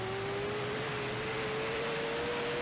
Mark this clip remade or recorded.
recorded